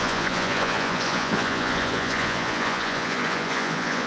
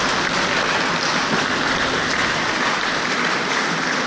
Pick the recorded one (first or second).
second